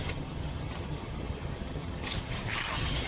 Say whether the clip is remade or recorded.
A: remade